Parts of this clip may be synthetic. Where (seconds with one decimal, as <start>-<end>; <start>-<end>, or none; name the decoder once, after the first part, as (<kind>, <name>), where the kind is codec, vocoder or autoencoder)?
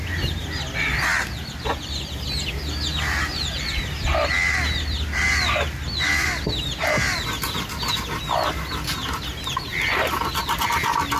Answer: none